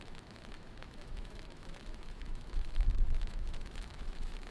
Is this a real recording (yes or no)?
no